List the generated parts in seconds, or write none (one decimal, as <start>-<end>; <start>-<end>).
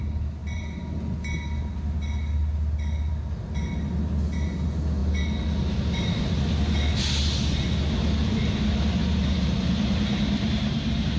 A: 9.0-11.2